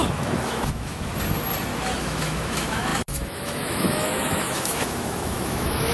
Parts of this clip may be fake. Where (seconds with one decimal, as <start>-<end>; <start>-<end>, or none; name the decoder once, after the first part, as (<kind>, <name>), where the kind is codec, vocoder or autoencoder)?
0.0-1.1 (autoencoder, DAC-VAE); 2.0-5.9